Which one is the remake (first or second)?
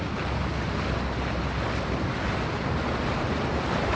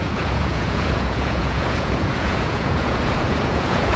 second